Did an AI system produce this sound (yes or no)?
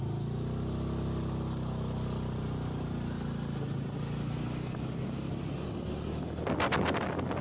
no